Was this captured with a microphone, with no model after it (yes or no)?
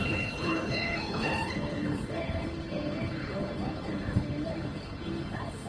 no